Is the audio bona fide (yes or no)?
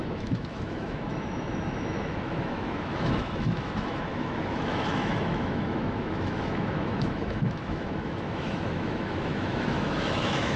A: no